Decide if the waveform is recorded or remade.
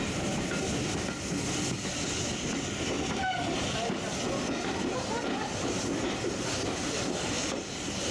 recorded